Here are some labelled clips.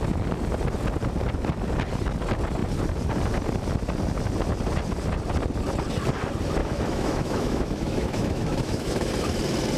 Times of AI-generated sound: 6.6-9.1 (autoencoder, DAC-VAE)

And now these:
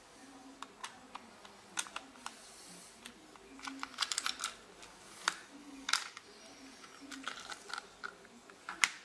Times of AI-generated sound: 5.6-6.2 (codec, DAC)

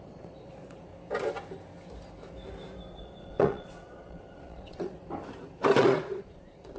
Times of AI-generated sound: 0.0-0.9 (vocoder, Vocos); 2.9-5.0; 5.8-6.8

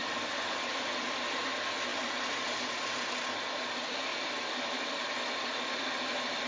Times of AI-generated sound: 0.0-1.4 (vocoder, BigVGAN v2); 1.9-3.1